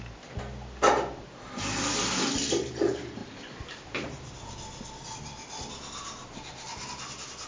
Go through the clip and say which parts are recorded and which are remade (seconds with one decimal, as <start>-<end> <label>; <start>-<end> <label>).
0.0-7.5 recorded